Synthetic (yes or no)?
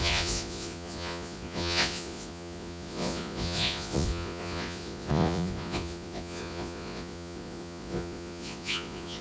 yes